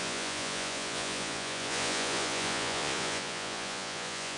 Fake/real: fake